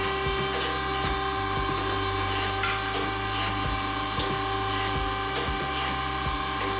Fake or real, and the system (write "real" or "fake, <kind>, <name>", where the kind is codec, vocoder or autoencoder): real